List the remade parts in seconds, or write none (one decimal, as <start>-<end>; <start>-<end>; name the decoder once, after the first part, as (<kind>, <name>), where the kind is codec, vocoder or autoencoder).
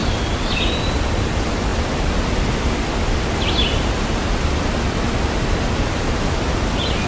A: none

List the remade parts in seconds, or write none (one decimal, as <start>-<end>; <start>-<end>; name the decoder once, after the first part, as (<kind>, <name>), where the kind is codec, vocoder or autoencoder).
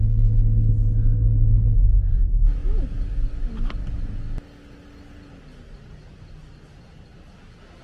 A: 0.0-0.7 (codec, SNAC)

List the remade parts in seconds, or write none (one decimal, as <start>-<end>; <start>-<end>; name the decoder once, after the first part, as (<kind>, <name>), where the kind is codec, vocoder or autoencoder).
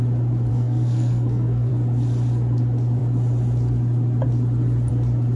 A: 0.5-1.7 (codec, SNAC)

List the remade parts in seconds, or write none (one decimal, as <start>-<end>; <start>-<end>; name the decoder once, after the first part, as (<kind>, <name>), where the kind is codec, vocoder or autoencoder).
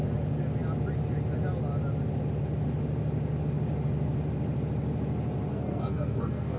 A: 5.5-6.6 (codec, SNAC)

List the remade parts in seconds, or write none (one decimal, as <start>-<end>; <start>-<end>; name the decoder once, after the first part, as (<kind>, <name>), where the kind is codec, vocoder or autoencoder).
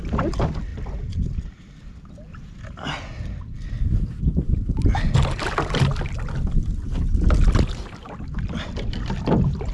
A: none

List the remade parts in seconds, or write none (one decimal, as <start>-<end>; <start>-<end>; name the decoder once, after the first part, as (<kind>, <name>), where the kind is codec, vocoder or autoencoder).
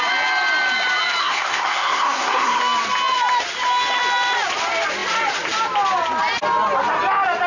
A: 1.2-2.6 (codec, SNAC)